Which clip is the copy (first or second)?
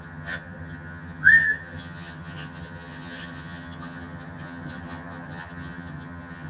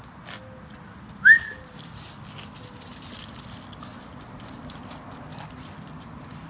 first